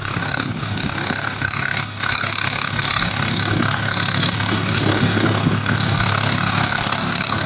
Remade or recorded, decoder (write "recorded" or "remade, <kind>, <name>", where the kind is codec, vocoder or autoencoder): remade, codec, DAC